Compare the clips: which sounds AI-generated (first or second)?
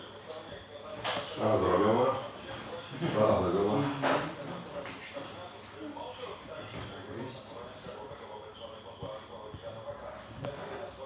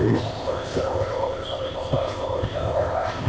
second